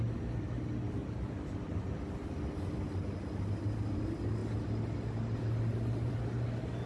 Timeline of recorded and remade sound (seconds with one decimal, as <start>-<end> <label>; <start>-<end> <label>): 0.0-6.9 recorded